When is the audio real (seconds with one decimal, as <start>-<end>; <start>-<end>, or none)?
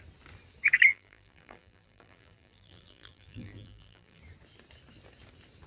0.0-0.9; 4.2-5.7